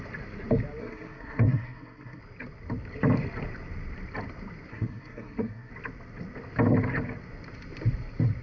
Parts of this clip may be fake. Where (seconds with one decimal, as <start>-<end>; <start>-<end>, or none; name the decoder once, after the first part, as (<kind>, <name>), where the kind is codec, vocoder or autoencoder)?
0.8-2.2 (codec, SNAC); 4.7-5.7